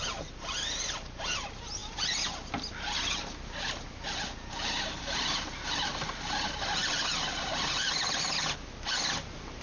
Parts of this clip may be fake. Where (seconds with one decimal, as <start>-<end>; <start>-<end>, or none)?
none